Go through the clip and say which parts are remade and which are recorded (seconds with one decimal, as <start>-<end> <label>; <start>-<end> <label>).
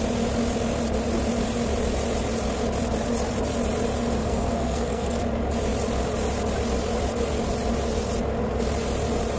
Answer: 0.0-4.2 recorded; 4.2-5.2 remade; 5.2-9.4 recorded